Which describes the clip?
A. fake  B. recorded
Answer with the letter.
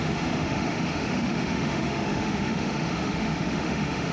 A